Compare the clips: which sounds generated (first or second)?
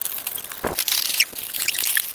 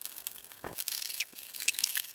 second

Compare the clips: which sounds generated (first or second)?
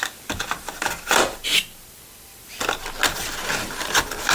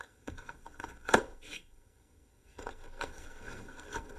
second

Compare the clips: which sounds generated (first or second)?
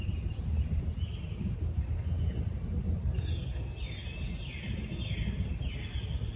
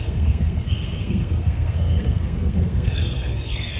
second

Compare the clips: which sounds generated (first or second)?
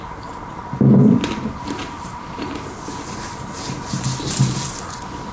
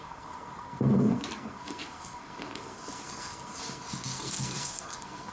second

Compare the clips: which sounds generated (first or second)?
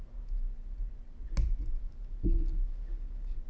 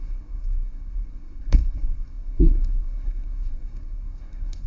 second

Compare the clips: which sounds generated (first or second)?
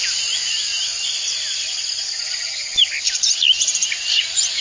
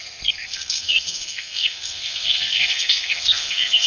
second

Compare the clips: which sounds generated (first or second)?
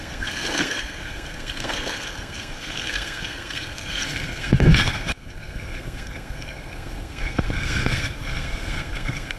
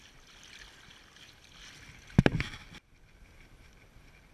first